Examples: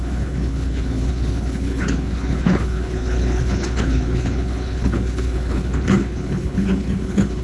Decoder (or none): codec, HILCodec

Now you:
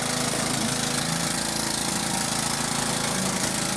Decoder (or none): none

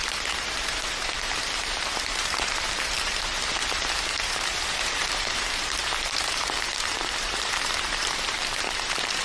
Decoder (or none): vocoder, BigVGAN v2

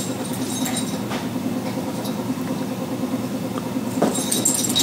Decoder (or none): none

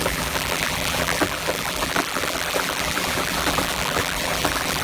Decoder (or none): vocoder, BigVGAN v2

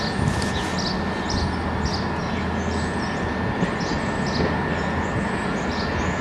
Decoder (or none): none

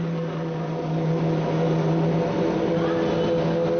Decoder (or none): none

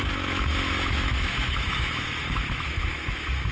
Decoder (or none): autoencoder, DAC-VAE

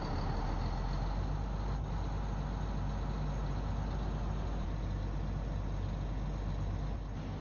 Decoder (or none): none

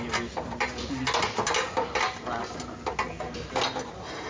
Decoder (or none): none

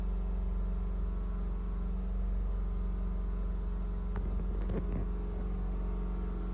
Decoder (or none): none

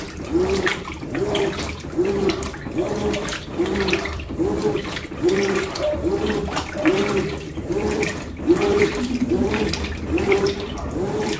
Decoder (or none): vocoder, BigVGAN v2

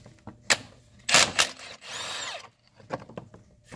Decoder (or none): none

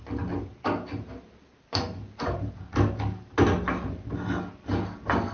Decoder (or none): none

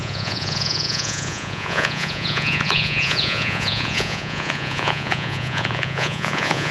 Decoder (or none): vocoder, Vocos